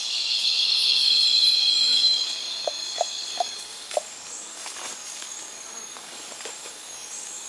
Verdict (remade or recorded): remade